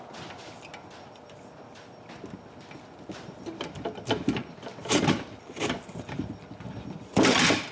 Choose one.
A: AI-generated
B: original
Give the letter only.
B